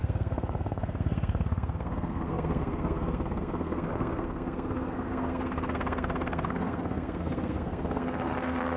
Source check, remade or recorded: remade